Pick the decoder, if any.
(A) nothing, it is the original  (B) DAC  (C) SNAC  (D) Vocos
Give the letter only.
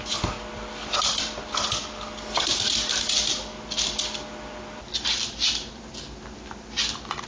A